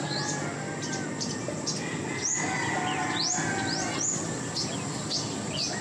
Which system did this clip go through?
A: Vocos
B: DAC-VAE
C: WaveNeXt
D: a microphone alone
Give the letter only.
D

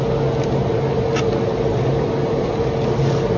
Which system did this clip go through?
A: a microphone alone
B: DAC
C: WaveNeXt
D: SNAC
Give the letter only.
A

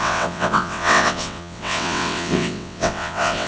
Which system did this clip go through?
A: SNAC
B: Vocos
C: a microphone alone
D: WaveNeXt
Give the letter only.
D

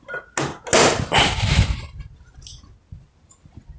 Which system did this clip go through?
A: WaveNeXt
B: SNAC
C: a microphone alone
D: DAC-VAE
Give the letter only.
C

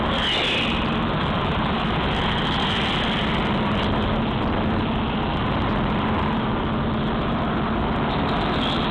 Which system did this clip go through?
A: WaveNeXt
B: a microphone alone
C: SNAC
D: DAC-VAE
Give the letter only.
B